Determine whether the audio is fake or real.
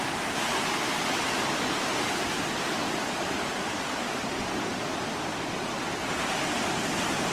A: real